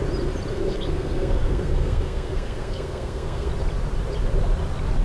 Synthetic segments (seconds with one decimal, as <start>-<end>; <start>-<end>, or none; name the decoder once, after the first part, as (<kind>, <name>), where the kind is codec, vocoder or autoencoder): 0.5-3.5 (codec, SNAC)